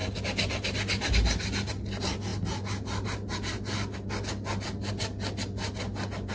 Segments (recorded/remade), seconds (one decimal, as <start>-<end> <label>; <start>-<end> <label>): 0.0-6.3 recorded